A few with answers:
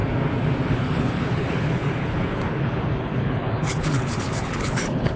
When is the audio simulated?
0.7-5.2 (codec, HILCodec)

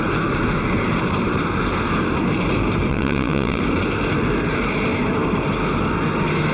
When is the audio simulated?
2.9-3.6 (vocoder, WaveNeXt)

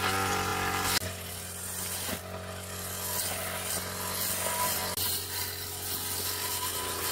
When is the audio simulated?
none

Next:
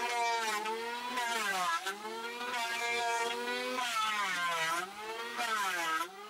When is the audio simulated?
1.5-4.4 (codec, DAC); 5.3-6.3

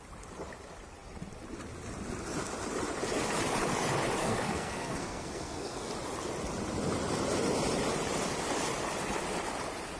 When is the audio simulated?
4.2-5.9 (codec, SNAC)

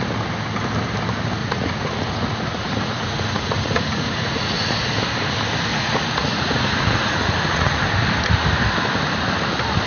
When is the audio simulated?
1.4-4.9 (vocoder, Vocos); 5.7-7.8